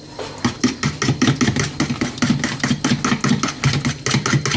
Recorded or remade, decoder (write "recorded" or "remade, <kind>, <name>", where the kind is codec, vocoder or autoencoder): recorded